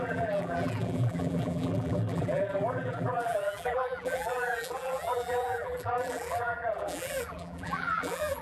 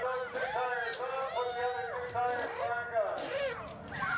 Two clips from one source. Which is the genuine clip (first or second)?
second